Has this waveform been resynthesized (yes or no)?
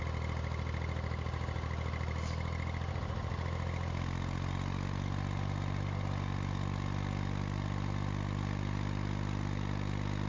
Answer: no